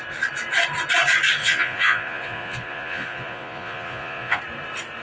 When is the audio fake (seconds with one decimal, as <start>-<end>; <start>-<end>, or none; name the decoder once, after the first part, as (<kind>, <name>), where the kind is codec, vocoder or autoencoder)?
1.4-4.4 (vocoder, Vocos)